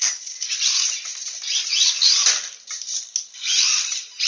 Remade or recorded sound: recorded